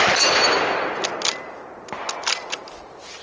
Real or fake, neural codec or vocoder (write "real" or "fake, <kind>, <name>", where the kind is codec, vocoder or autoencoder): real